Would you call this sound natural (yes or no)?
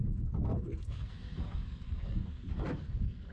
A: no